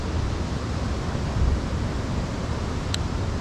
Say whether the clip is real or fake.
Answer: real